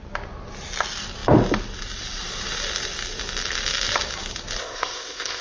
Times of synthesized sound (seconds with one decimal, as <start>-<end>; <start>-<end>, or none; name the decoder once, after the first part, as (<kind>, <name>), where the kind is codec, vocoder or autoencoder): 4.6-5.4 (codec, ZipCodec)